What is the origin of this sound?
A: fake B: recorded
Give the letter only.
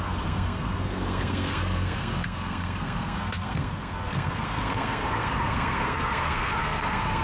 A